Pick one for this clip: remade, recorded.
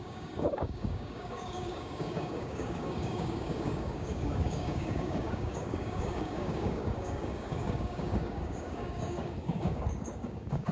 remade